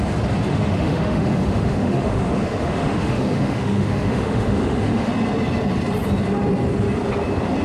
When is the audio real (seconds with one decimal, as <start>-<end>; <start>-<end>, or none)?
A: 0.0-0.5; 5.1-7.6